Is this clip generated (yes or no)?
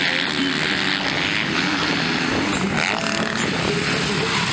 no